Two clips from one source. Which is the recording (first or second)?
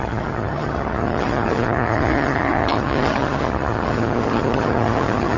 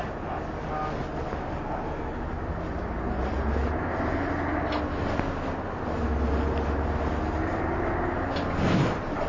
second